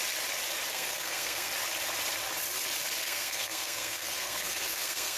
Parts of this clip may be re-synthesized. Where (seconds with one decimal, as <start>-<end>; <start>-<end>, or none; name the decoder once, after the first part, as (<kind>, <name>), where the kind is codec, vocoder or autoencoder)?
0.7-1.5 (codec, SNAC); 3.0-5.2